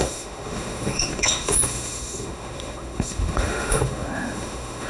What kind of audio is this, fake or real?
fake